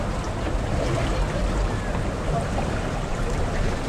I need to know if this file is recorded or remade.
recorded